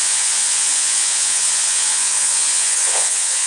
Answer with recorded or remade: remade